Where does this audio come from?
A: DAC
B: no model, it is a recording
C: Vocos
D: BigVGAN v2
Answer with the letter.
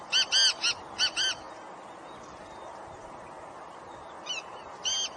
B